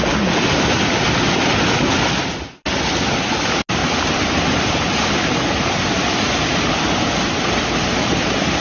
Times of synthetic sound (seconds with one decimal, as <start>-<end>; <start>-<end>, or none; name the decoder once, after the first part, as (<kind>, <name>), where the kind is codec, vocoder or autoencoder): 3.8-7.3 (vocoder, BigVGAN v2)